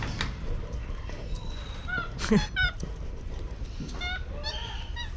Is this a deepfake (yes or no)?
no